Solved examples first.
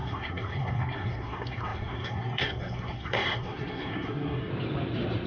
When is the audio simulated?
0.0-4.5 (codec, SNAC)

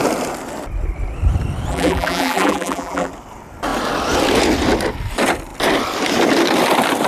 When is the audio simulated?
1.7-3.1 (vocoder, BigVGAN v2)

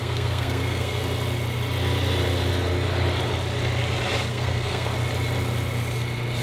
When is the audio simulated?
0.0-1.0 (codec, SNAC); 4.3-4.9

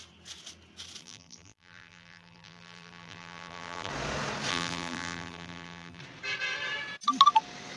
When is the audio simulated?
1.0-3.9 (vocoder, BigVGAN v2); 4.5-6.0